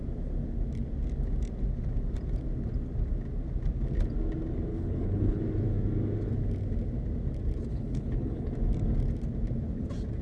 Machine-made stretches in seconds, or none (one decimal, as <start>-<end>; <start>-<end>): 4.7-5.4; 7.7-8.5